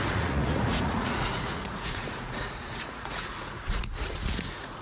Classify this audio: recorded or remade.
remade